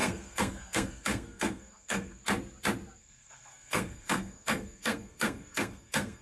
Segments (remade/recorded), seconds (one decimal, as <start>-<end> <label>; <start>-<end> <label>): 0.0-2.2 remade; 2.2-3.0 recorded; 3.0-6.2 remade